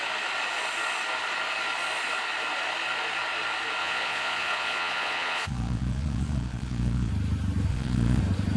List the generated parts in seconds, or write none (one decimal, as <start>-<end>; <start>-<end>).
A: 3.8-7.1; 7.7-8.2

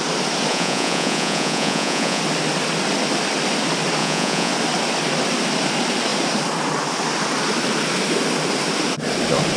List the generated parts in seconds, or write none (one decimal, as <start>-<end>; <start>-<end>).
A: 0.5-2.2; 4.0-4.5